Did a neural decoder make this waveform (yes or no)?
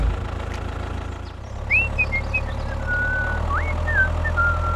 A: no